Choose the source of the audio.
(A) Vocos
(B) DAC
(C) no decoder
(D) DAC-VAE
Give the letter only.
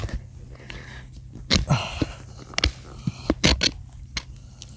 C